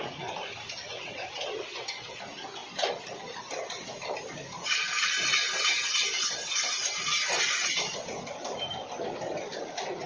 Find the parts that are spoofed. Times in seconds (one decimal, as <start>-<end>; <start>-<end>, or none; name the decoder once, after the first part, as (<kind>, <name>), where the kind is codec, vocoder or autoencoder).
0.8-2.2 (vocoder, WaveNeXt)